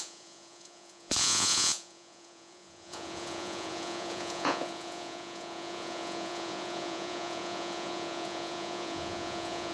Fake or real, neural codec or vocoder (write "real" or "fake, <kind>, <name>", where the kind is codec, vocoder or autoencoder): fake, vocoder, Vocos